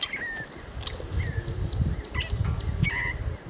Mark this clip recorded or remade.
recorded